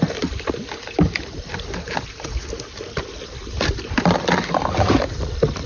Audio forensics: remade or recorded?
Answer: recorded